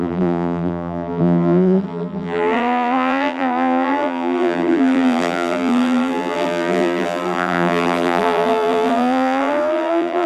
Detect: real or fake fake